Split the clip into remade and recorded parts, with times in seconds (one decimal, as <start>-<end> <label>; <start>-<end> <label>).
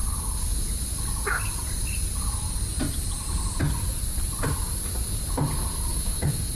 0.0-5.9 recorded; 5.9-6.5 remade